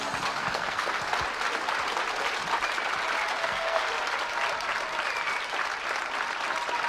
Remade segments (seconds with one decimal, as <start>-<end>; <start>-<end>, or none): 0.4-1.0; 3.4-3.9